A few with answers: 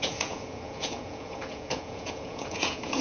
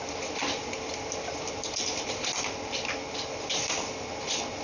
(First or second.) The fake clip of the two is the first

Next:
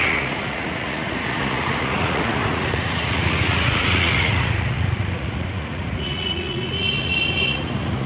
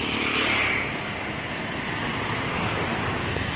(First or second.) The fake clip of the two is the first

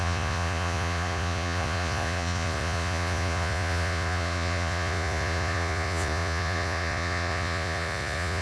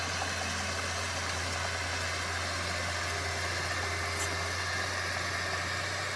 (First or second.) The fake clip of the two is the first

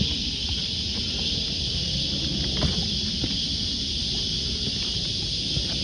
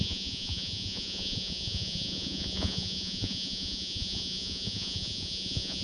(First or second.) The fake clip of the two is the second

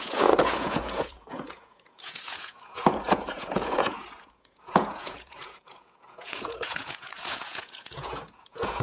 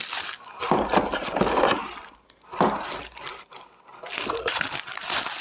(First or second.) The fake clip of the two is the first